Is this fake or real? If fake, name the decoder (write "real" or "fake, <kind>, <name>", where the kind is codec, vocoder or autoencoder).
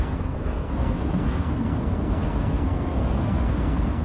fake, codec, SNAC